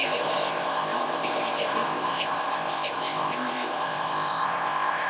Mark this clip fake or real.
fake